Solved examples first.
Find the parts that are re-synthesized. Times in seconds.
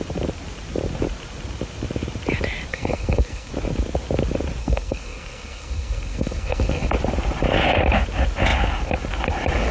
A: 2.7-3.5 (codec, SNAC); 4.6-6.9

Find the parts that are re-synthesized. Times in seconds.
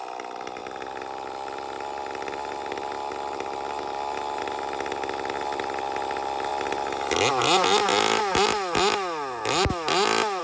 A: none